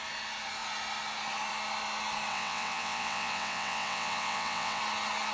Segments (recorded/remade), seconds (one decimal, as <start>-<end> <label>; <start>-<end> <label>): 0.0-2.3 recorded; 2.3-4.8 remade; 4.8-5.3 recorded